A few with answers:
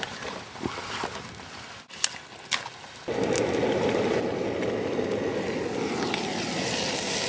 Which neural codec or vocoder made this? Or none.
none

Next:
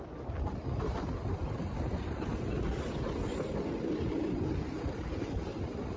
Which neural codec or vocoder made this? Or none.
none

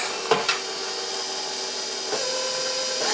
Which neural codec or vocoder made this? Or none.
none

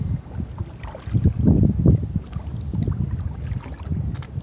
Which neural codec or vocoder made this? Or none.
none